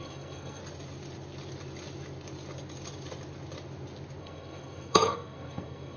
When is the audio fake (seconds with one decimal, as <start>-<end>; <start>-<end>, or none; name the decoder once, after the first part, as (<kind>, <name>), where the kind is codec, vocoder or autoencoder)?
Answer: 0.0-0.6 (codec, SNAC); 4.2-6.0